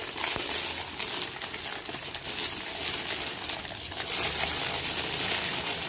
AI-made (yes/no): no